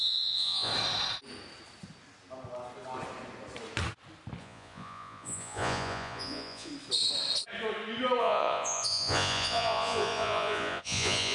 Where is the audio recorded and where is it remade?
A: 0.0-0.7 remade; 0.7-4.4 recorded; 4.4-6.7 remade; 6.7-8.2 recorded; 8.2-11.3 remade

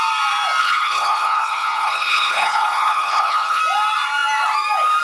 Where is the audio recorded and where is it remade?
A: 0.0-0.6 recorded; 0.6-3.6 remade; 3.6-5.0 recorded

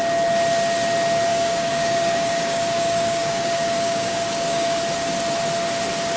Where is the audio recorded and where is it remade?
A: 0.0-1.3 recorded; 1.3-4.8 remade; 4.8-6.2 recorded